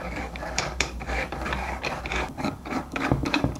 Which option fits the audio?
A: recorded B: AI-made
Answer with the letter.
B